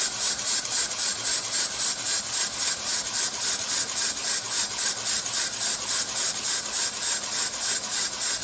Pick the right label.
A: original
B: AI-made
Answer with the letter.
A